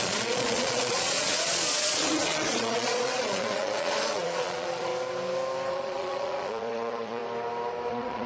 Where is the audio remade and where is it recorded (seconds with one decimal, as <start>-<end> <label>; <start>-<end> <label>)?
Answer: 0.0-4.9 remade; 4.9-5.7 recorded; 5.7-7.2 remade; 7.2-7.9 recorded; 7.9-8.3 remade